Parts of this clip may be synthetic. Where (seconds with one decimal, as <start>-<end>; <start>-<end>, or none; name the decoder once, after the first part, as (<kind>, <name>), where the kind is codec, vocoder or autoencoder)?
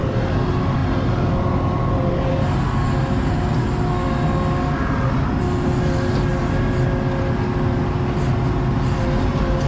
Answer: none